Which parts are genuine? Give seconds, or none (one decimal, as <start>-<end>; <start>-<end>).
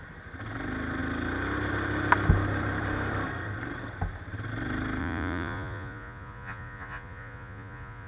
0.0-5.0